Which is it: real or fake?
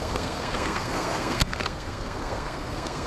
fake